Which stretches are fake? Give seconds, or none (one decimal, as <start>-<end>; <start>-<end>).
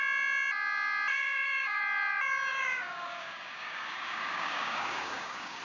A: 1.1-1.8; 2.5-5.6